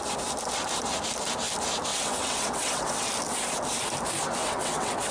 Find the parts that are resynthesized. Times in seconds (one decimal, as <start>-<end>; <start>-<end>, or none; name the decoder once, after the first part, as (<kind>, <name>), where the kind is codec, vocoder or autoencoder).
1.9-3.1 (vocoder, WaveNeXt); 4.4-5.1